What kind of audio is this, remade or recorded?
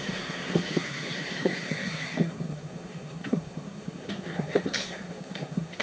remade